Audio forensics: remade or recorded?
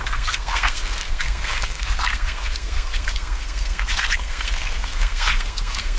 remade